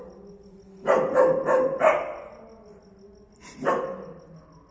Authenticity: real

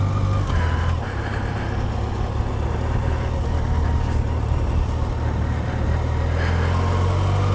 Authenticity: real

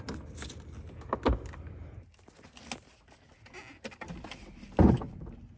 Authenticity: real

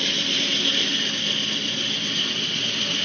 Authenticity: real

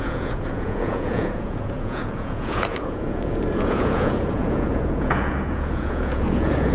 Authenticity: fake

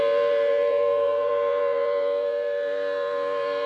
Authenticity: fake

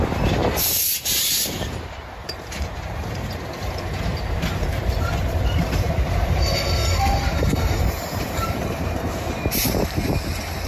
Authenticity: fake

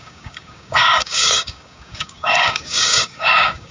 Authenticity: fake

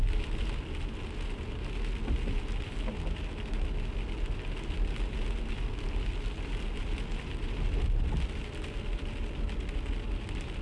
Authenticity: real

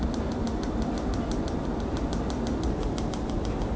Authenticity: real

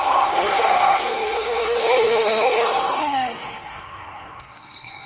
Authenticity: fake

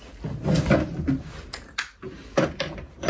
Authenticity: real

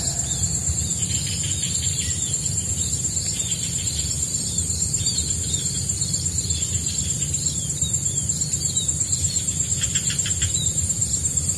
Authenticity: real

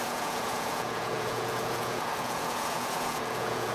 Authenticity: fake